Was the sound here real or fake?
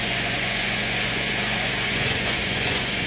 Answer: fake